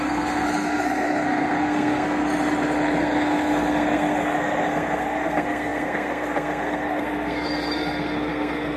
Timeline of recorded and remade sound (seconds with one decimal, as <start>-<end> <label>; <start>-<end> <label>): 0.0-2.2 remade; 2.2-3.0 recorded; 3.0-8.8 remade